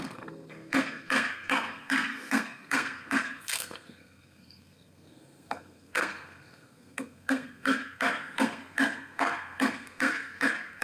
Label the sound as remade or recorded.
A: remade